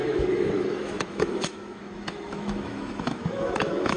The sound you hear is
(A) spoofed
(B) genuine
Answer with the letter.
A